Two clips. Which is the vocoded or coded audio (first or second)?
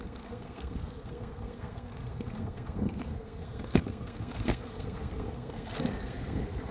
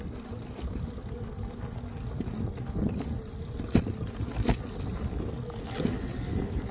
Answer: first